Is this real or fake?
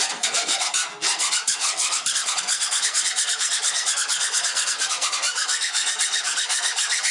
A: fake